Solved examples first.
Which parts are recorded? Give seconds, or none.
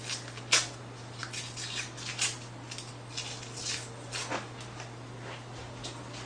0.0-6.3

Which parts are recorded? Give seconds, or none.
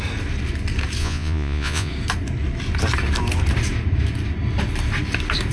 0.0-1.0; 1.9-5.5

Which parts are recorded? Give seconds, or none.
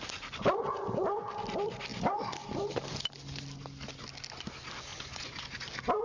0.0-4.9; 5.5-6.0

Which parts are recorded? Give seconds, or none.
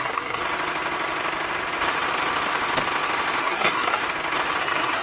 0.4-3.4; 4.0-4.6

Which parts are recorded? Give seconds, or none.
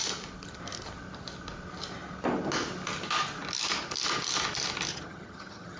0.0-4.9